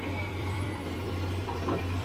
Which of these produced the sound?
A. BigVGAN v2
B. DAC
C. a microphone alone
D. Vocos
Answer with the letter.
A